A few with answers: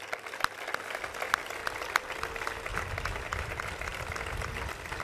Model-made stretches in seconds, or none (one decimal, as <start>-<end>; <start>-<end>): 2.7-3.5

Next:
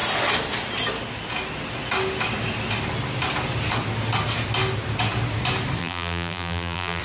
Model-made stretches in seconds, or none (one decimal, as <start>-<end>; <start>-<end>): 5.8-7.0

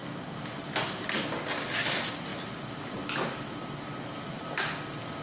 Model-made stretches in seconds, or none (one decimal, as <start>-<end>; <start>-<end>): none

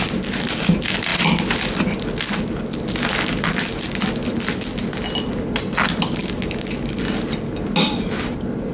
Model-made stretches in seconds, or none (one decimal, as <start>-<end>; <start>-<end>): 1.1-2.9

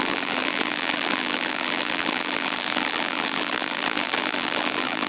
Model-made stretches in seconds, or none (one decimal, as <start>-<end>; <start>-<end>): 0.0-5.1

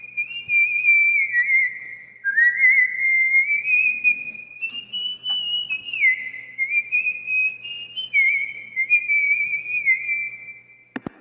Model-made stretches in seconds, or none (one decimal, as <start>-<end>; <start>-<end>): none